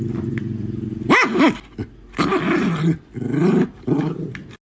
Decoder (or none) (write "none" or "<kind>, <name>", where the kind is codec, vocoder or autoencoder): none